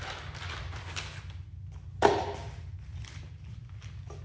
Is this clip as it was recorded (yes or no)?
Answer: yes